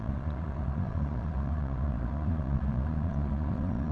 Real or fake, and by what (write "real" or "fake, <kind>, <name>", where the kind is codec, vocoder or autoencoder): fake, vocoder, Vocos